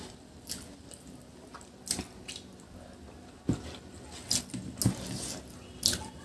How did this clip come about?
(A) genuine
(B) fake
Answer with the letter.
A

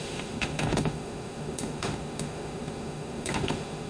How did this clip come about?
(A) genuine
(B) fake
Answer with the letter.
B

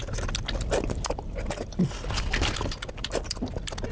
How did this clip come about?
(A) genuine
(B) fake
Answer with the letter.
A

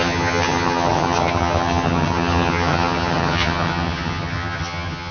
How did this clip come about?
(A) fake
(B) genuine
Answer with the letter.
A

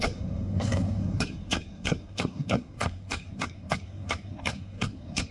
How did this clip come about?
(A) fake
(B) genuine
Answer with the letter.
A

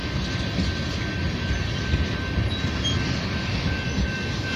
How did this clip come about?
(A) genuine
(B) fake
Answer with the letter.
A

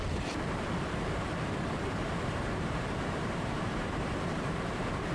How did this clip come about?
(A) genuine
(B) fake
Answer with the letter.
B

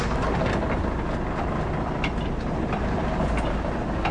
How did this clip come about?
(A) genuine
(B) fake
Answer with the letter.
A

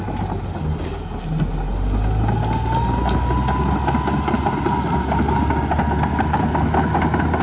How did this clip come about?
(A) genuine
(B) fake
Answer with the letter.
A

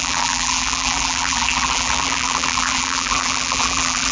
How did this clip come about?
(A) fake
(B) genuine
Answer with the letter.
A